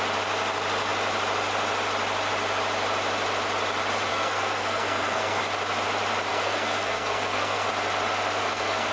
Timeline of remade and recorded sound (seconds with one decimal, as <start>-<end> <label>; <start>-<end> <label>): 0.0-4.1 recorded; 4.1-5.4 remade; 5.4-6.3 recorded; 6.3-7.7 remade; 7.7-8.4 recorded; 8.4-8.9 remade